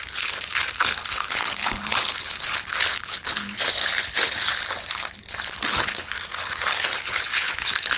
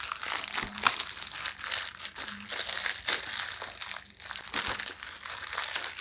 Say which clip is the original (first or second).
second